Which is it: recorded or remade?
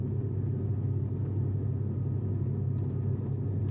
recorded